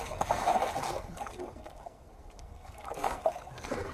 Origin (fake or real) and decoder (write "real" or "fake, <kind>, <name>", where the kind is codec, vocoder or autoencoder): fake, codec, SNAC